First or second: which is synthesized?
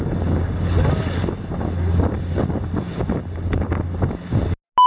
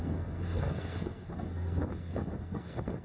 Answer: second